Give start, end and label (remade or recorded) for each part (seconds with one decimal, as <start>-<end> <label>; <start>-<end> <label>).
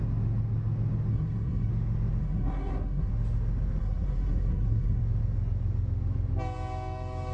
0.0-1.1 recorded; 1.1-1.7 remade; 1.7-2.2 recorded; 2.2-3.1 remade; 3.1-3.8 recorded; 3.8-5.0 remade; 5.0-7.3 recorded